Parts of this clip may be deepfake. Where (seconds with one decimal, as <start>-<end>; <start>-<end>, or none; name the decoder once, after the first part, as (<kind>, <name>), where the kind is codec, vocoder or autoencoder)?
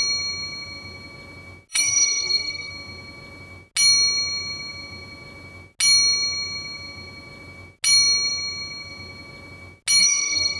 1.7-2.7 (codec, SNAC); 10.0-10.6